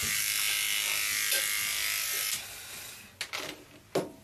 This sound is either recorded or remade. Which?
recorded